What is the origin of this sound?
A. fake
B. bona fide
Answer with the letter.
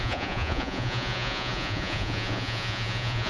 A